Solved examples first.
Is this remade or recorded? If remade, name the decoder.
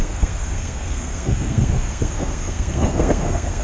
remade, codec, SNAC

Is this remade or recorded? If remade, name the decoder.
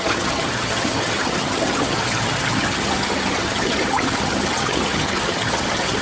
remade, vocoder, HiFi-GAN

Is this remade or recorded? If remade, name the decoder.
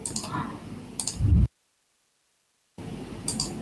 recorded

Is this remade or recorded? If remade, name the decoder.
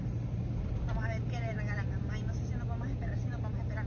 recorded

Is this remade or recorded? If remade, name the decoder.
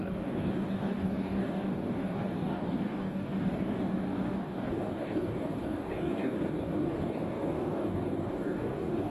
remade, codec, DAC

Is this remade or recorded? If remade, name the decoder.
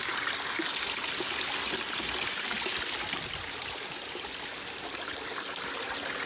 recorded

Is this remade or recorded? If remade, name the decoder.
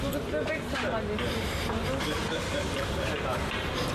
recorded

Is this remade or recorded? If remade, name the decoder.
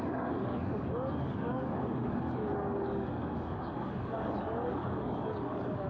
remade, codec, DAC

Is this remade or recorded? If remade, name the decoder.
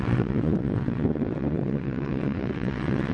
remade, vocoder, WaveNeXt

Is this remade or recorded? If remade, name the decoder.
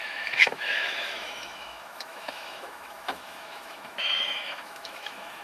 remade, autoencoder, DAC-VAE